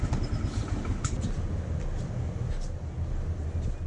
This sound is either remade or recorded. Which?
recorded